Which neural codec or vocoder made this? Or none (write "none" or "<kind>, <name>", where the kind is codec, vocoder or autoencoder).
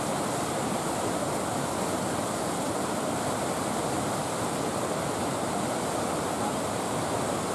none